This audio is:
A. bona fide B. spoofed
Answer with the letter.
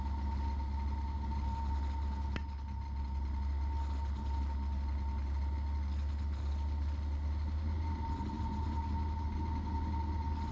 A